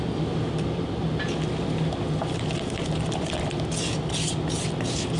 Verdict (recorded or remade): recorded